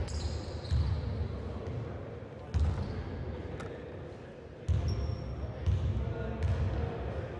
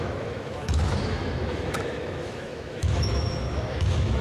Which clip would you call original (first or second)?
first